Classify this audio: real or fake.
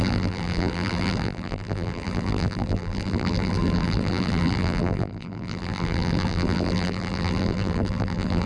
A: fake